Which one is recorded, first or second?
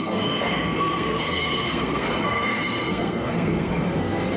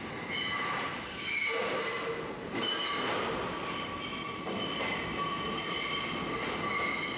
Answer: second